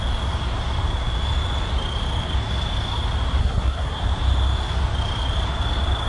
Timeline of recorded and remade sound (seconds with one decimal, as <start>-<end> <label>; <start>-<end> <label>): 0.0-3.4 recorded; 3.4-4.0 remade; 4.0-6.1 recorded